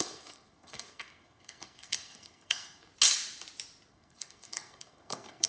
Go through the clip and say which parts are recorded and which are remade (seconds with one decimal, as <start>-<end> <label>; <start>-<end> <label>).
0.0-2.9 remade; 2.9-3.9 recorded; 3.9-5.5 remade